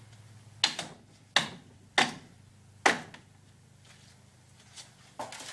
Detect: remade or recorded recorded